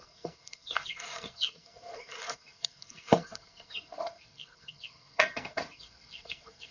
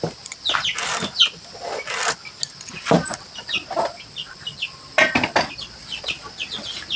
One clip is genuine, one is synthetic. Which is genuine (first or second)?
second